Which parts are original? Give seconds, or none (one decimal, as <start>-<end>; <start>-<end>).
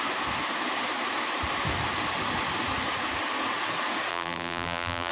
0.0-4.1